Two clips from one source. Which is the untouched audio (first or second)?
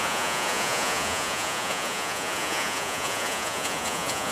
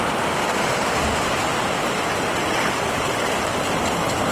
second